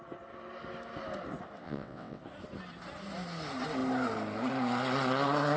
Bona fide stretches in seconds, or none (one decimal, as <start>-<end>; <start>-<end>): 0.0-1.6; 2.2-5.6